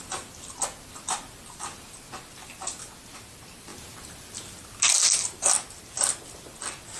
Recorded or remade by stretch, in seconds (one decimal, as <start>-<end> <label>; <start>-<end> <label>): 0.0-7.0 recorded